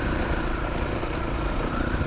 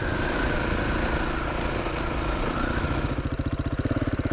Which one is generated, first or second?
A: first